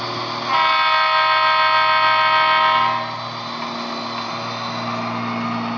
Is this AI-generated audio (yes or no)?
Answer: no